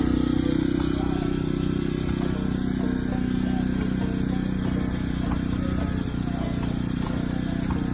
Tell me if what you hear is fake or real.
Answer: real